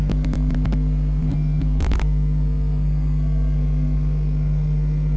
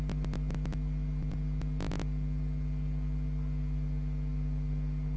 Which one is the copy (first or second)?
first